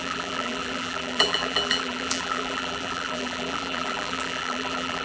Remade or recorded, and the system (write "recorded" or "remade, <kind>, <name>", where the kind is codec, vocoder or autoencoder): remade, vocoder, BigVGAN v2